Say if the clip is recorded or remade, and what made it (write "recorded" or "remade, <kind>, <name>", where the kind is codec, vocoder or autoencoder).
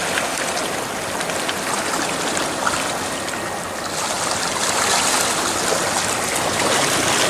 recorded